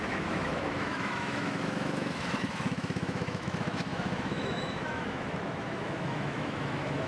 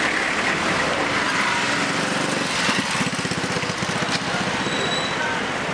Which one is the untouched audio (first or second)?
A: second